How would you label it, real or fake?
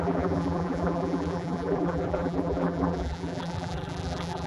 fake